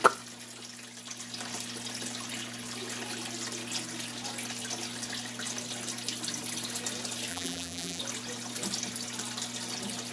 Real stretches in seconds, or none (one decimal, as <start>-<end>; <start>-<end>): 0.0-7.3; 8.0-10.1